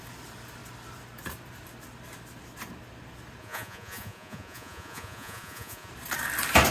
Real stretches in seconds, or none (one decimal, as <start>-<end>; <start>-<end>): 0.0-3.4; 5.9-6.7